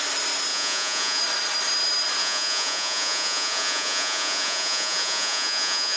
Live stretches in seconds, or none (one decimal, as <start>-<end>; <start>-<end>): 0.0-0.5; 1.2-2.2

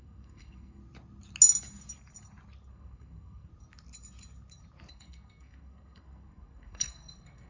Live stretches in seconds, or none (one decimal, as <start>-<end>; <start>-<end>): 0.8-2.7; 3.5-4.9

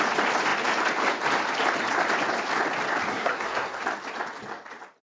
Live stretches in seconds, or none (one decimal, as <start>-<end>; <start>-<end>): 0.0-3.1; 3.8-5.0

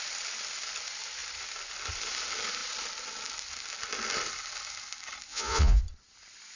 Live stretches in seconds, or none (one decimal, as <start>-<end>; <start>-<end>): 0.0-5.3; 5.8-6.6

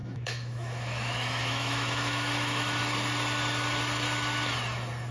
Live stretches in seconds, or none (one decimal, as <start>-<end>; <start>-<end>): 2.8-5.1

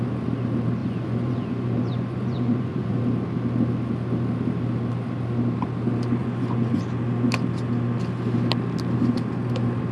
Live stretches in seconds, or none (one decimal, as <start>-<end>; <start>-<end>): 0.0-0.8; 3.0-6.2; 6.8-9.9

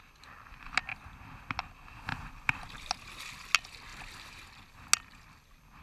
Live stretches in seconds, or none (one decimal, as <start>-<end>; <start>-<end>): 0.0-5.8